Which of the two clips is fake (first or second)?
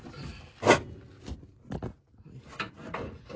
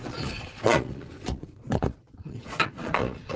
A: second